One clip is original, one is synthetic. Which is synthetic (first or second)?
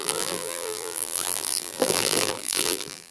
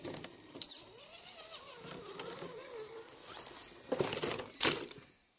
first